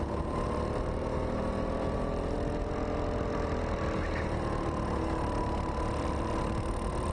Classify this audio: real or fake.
real